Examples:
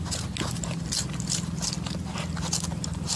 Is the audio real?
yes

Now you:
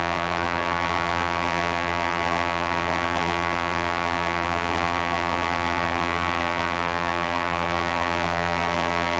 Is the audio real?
no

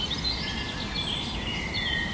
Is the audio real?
yes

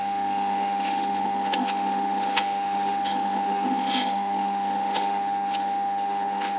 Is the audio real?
no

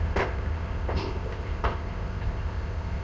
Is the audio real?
no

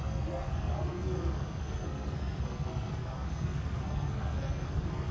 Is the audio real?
no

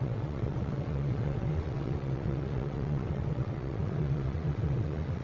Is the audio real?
no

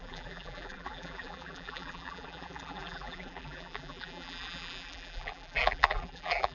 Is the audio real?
no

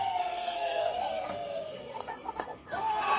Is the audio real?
no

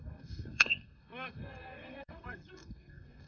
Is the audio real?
no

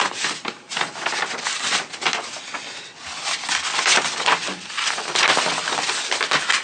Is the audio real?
yes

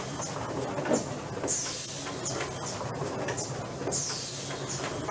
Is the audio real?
yes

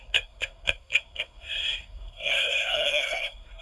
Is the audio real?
no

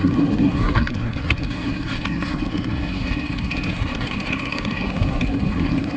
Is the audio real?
no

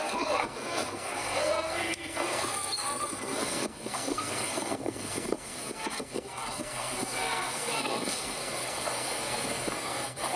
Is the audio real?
no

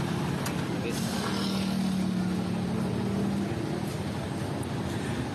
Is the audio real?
yes